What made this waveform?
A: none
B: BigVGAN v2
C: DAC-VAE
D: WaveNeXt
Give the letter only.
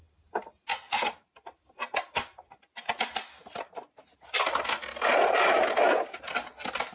A